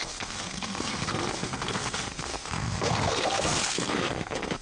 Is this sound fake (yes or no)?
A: yes